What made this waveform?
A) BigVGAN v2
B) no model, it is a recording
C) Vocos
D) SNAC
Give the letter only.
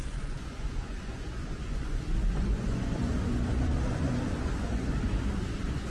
C